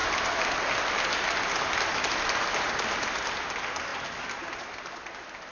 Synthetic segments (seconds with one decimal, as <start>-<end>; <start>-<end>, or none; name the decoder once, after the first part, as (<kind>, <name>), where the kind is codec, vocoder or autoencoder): none